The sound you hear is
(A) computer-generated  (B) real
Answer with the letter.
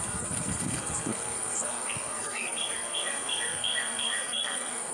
A